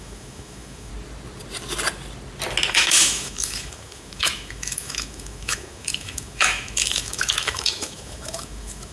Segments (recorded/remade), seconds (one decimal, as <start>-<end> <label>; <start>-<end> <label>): 0.0-0.9 remade; 0.9-2.7 recorded; 2.7-8.9 remade